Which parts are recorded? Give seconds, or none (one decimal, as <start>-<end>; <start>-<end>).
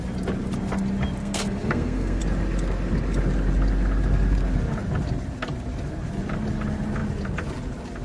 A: 0.0-1.2; 2.2-8.0